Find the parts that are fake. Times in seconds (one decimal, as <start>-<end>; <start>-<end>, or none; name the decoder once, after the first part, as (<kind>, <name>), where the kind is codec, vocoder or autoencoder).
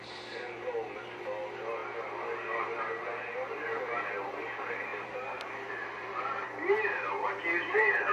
none